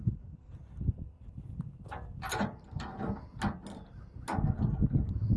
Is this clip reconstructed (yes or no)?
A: no